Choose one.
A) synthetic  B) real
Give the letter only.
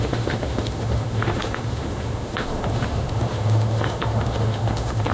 A